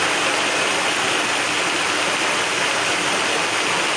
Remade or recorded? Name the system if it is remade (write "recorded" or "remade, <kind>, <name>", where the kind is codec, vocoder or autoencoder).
recorded